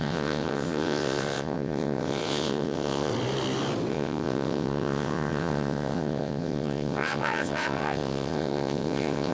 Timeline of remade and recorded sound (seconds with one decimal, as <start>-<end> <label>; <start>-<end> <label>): 0.0-3.1 remade; 3.1-3.9 recorded; 3.9-9.3 remade